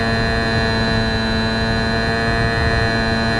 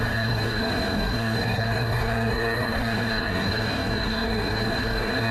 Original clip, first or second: first